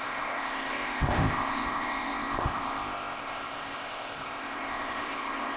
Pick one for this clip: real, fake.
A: fake